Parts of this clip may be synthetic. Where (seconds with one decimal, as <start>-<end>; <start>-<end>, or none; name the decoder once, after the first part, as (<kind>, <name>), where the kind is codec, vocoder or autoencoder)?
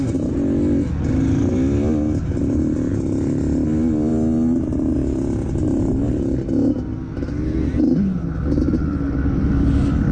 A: none